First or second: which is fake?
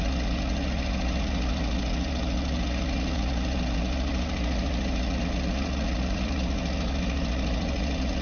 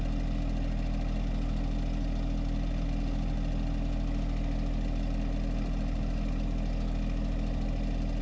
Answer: first